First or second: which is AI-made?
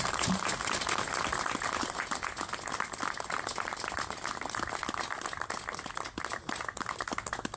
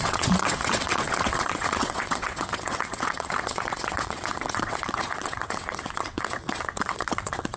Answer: second